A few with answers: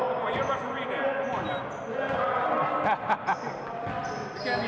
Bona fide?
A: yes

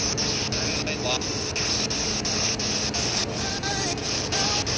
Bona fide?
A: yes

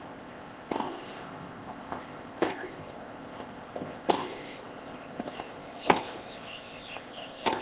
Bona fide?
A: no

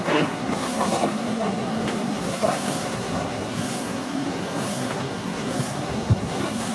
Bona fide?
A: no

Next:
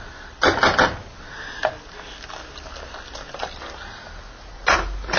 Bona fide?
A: yes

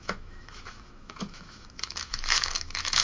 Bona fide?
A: no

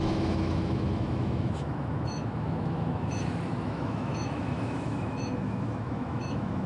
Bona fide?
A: no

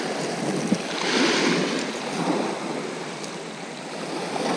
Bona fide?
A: yes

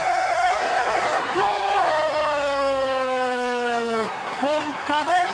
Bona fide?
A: no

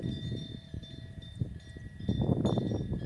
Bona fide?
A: yes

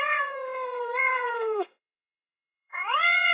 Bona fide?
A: no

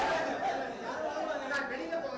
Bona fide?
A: yes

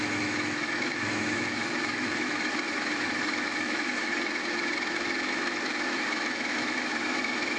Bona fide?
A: no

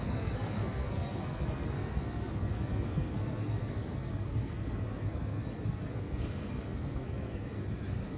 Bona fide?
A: no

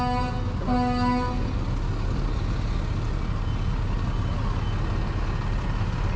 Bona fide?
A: yes